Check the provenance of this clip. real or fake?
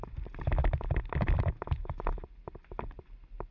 real